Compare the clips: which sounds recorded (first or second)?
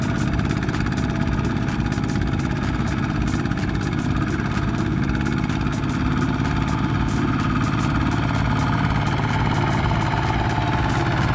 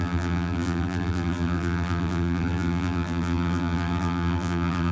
first